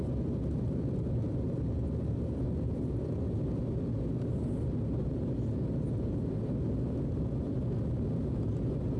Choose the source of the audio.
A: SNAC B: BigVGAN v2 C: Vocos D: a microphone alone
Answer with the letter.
D